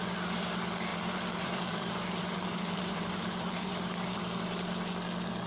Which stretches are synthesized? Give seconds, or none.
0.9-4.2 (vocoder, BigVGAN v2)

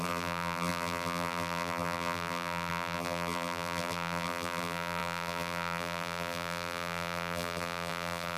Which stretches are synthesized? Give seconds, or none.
0.0-8.4 (vocoder, BigVGAN v2)